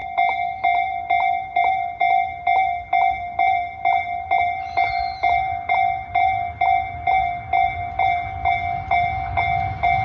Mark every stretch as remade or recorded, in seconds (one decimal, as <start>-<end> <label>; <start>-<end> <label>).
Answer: 0.0-10.0 recorded